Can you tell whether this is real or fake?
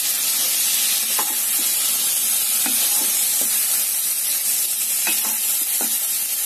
real